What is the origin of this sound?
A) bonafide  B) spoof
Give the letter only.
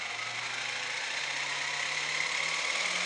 A